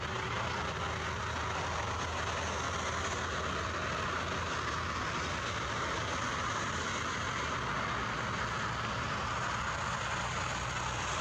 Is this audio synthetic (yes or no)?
no